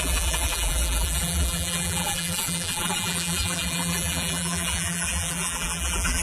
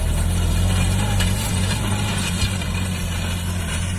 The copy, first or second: first